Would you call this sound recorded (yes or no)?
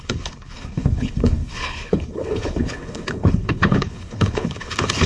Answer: no